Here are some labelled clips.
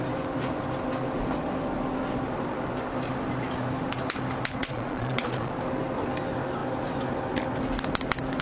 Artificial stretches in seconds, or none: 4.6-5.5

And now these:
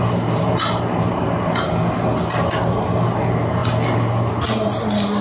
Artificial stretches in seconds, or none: none

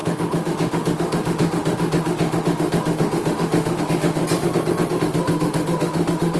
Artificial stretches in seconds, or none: 0.0-4.2; 5.0-6.4

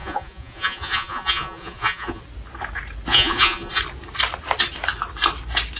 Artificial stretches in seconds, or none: 0.0-2.2; 3.1-3.8

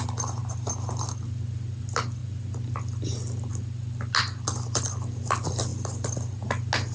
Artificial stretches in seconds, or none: none

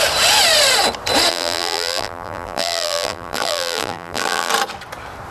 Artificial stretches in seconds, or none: 1.3-4.5

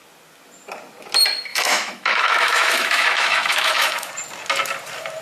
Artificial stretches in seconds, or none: 1.5-4.1